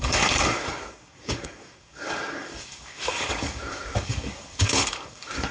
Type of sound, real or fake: fake